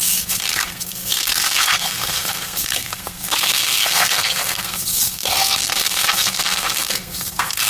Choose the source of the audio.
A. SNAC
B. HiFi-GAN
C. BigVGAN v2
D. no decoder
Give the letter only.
A